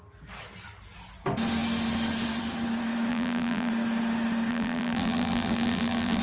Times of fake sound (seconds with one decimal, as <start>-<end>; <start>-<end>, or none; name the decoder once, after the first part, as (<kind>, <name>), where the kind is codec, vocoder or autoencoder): 3.1-3.7 (vocoder, BigVGAN v2); 4.5-6.2